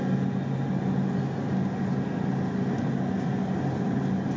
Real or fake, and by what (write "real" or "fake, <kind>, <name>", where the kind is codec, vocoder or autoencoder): real